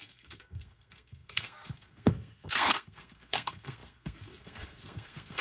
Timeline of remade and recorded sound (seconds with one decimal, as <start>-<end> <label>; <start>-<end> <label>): 0.0-5.4 remade